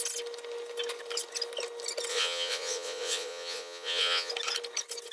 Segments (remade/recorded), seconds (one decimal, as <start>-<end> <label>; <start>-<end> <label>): 0.0-2.1 recorded; 2.1-4.3 remade; 4.3-5.1 recorded